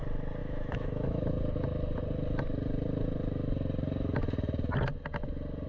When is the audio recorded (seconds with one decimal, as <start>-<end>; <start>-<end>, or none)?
0.0-0.4; 1.2-5.7